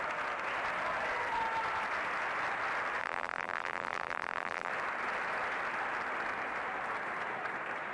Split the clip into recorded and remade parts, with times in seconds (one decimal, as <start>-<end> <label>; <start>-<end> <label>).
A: 0.0-3.0 recorded; 3.0-4.7 remade; 4.7-7.9 recorded